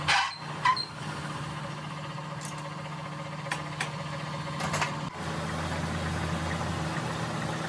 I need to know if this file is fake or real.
real